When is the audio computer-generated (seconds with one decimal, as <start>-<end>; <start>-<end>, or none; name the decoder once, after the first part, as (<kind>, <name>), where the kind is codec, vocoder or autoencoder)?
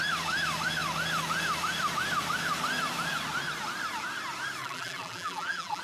4.6-5.8 (vocoder, BigVGAN v2)